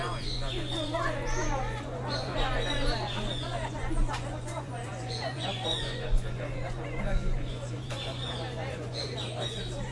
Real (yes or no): no